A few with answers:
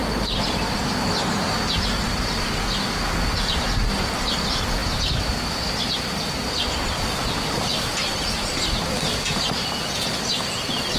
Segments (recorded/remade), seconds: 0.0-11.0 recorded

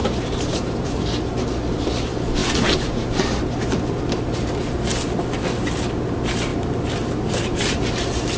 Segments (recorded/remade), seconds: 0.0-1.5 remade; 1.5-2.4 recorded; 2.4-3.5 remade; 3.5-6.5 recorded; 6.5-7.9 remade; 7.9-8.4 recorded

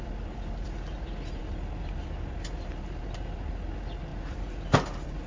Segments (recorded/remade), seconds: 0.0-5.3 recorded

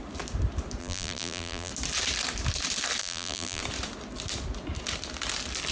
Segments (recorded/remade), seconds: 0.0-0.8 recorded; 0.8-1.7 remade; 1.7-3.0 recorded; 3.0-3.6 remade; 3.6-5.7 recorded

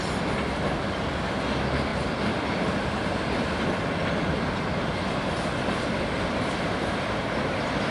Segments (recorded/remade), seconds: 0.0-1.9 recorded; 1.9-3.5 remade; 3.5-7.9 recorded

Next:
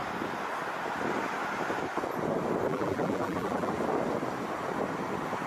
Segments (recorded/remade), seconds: 0.0-2.7 recorded; 2.7-3.7 remade; 3.7-5.5 recorded